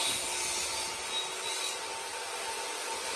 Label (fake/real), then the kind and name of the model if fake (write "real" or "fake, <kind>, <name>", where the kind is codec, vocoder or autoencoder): real